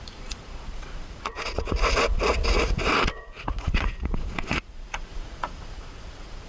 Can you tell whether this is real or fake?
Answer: fake